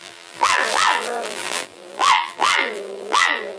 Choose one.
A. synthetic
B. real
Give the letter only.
A